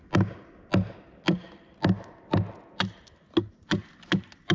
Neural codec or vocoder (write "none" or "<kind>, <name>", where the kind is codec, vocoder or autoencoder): none